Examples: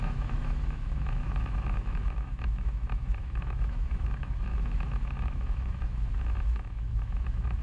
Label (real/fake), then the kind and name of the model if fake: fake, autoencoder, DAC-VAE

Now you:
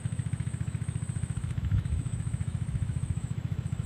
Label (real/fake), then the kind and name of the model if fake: fake, autoencoder, DAC-VAE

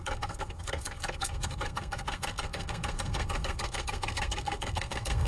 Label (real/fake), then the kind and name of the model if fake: fake, codec, SNAC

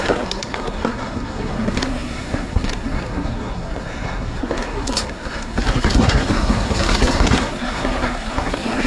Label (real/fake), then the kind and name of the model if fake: fake, codec, SNAC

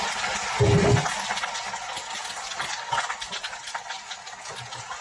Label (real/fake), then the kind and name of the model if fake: real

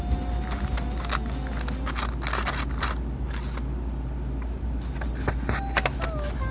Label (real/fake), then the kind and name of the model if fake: real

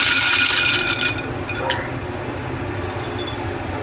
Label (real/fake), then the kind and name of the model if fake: real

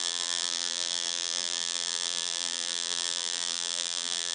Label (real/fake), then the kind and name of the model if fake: fake, vocoder, BigVGAN v2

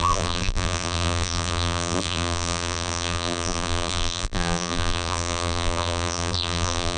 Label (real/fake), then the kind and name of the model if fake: fake, vocoder, BigVGAN v2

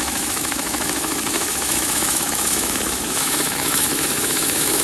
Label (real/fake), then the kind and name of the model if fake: fake, autoencoder, DAC-VAE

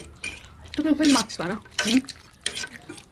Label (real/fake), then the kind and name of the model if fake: fake, vocoder, BigVGAN v2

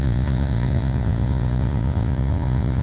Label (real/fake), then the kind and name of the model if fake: fake, vocoder, Vocos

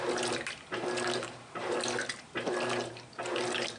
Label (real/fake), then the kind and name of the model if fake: real